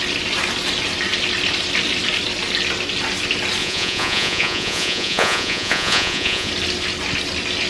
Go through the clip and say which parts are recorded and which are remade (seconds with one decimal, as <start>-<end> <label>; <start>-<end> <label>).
0.0-3.6 recorded; 3.6-6.5 remade; 6.5-7.7 recorded